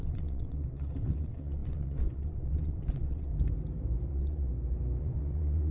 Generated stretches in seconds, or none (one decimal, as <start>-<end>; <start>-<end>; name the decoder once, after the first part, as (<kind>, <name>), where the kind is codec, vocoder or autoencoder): 0.0-3.3 (vocoder, WaveNeXt); 4.1-4.5; 5.0-5.7